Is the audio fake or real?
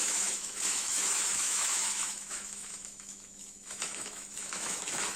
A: fake